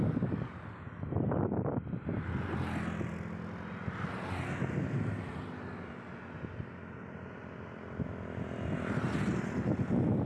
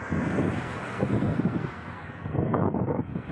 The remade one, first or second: second